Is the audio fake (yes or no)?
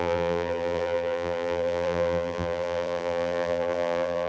yes